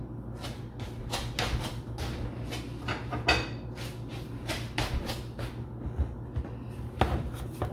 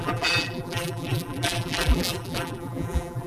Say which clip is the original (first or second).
first